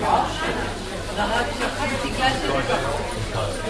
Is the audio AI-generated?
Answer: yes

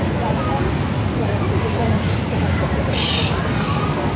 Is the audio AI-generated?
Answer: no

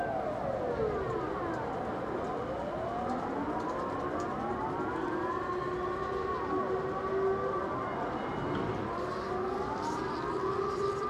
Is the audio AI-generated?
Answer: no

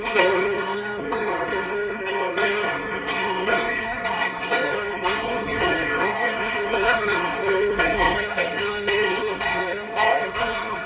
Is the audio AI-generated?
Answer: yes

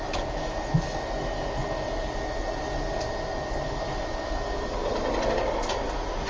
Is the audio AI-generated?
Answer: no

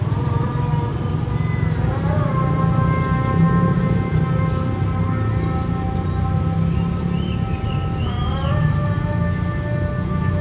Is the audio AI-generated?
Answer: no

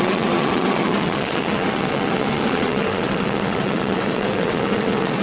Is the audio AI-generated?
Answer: yes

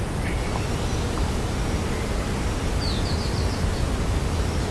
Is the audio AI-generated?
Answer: no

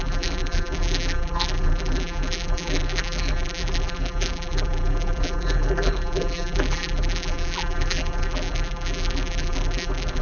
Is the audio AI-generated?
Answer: yes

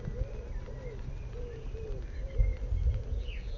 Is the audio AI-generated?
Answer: no